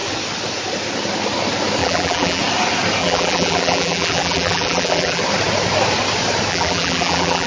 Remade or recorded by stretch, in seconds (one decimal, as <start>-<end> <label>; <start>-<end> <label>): 0.0-1.8 recorded; 1.8-2.4 remade; 2.4-3.0 recorded; 3.0-5.2 remade; 5.2-6.5 recorded; 6.5-7.5 remade